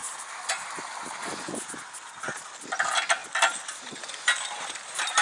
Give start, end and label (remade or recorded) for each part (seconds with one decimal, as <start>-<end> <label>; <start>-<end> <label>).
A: 0.0-5.2 recorded